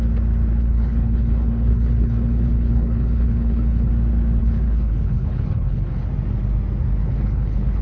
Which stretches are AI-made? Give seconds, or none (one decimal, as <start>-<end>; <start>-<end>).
0.6-3.9; 4.4-6.1; 7.0-7.8